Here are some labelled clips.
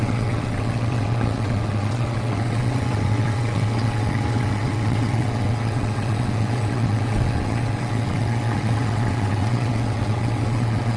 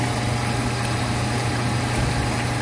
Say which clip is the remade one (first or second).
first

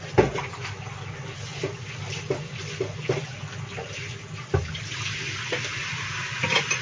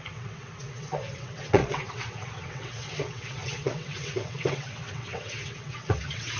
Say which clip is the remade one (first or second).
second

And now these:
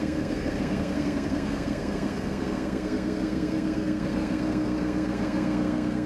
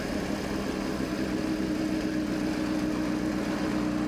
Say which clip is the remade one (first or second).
first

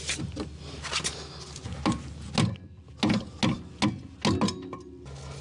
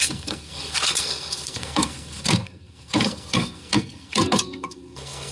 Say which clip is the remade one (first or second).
second